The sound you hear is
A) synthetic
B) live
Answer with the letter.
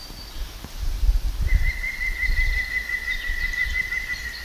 A